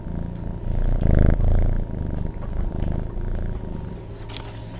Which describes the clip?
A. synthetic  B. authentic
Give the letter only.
B